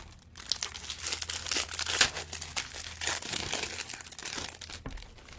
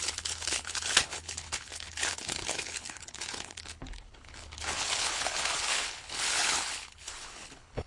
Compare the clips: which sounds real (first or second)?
first